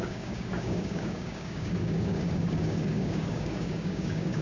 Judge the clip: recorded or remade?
remade